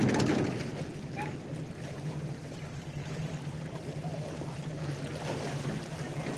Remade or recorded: recorded